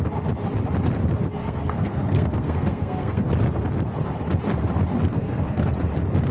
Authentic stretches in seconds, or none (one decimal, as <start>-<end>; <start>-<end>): 0.0-1.4; 3.3-5.1; 5.7-6.3